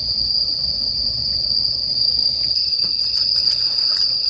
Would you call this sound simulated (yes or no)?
yes